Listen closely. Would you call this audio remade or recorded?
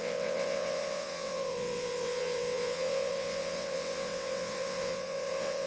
remade